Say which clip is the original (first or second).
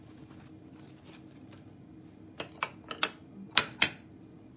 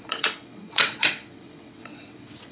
first